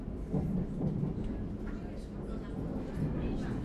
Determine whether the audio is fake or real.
real